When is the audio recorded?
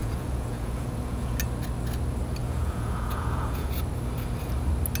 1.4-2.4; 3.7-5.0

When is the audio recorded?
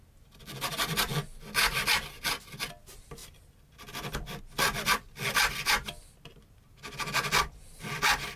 0.0-8.4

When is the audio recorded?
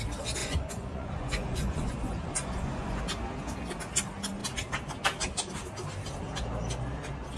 0.0-0.4; 3.0-7.4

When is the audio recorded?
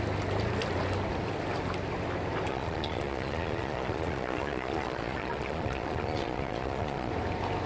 0.0-2.5; 7.1-7.7